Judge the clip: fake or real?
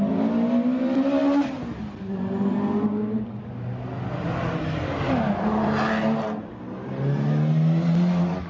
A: real